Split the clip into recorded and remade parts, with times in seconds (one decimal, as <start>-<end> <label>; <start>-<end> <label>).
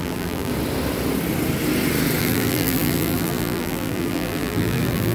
0.0-0.5 remade; 0.5-2.2 recorded; 2.2-5.1 remade